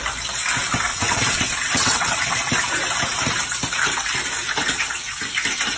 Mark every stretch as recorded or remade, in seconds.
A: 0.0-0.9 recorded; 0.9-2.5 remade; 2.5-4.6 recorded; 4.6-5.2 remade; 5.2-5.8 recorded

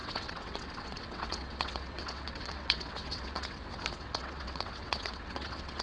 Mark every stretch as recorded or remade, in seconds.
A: 0.0-5.8 remade

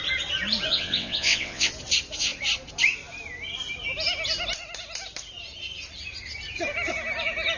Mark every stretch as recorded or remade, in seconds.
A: 0.0-0.7 recorded; 0.7-1.7 remade; 1.7-7.6 recorded

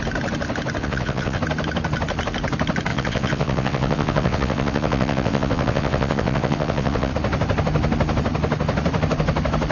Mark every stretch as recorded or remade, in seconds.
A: 0.0-0.8 recorded; 0.8-1.4 remade; 1.4-2.9 recorded; 2.9-7.1 remade; 7.1-9.7 recorded

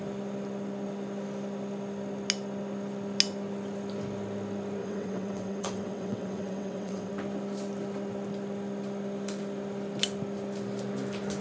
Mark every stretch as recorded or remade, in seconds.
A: 0.0-4.8 recorded; 4.8-7.1 remade; 7.1-11.4 recorded

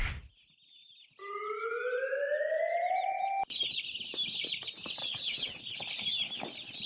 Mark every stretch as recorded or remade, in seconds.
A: 0.0-5.0 recorded; 5.0-5.6 remade; 5.6-6.9 recorded

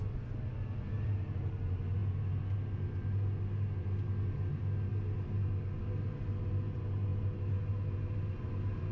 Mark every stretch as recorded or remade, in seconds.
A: 0.0-8.9 recorded